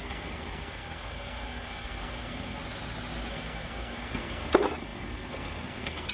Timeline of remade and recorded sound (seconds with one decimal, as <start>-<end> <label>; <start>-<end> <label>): 0.0-2.6 remade; 2.6-3.3 recorded; 3.3-6.1 remade